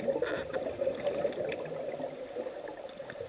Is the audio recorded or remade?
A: recorded